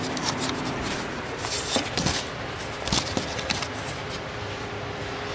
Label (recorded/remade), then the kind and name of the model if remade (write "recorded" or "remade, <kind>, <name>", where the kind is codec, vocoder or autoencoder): recorded